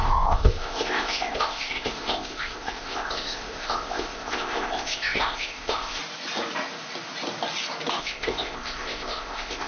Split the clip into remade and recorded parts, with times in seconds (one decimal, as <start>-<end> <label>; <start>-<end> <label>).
0.0-6.0 remade; 6.0-8.0 recorded; 8.0-9.7 remade